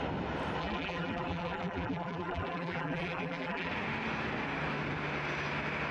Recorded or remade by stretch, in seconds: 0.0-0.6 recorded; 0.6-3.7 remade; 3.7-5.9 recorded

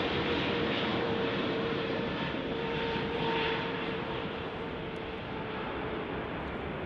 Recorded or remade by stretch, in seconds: 0.0-0.9 recorded; 0.9-4.8 remade; 4.8-6.9 recorded

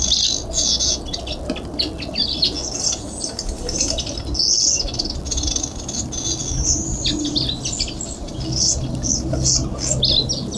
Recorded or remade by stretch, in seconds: 0.0-10.6 recorded

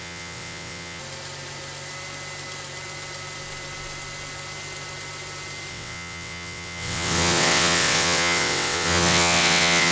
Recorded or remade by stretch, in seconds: 0.0-1.0 remade; 1.0-5.7 recorded; 5.7-9.9 remade

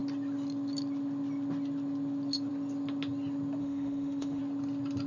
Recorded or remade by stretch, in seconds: 0.0-3.6 recorded; 3.6-4.4 remade; 4.4-5.1 recorded